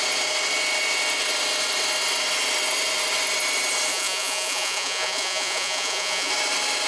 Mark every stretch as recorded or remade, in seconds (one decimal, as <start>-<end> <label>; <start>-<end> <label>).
0.0-3.9 recorded; 3.9-6.3 remade; 6.3-6.9 recorded